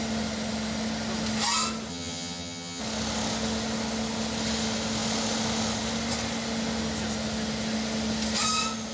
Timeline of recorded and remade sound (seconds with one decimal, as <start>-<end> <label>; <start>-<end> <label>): 0.0-1.9 recorded; 1.9-2.8 remade; 2.8-8.9 recorded